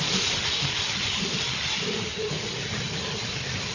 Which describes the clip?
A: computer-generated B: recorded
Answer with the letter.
B